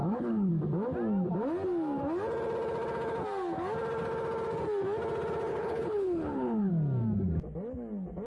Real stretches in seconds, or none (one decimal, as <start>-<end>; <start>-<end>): 0.5-5.5; 6.7-8.3